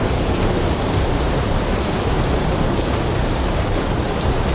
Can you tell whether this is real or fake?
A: fake